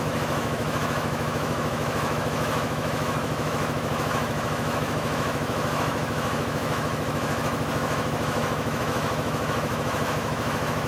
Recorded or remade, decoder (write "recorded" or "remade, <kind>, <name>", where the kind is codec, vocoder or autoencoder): remade, autoencoder, DAC-VAE